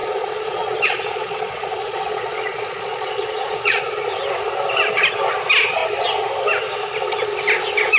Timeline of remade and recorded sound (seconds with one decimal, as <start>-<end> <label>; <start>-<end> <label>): 0.0-3.8 remade; 3.8-8.0 recorded